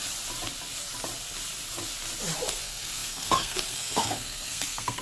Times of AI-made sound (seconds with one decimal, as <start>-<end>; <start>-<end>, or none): 2.5-5.0